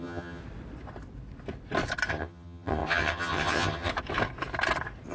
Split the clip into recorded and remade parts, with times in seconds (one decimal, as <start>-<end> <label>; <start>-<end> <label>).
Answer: 0.0-0.4 remade; 0.4-2.1 recorded; 2.1-3.9 remade; 3.9-5.1 recorded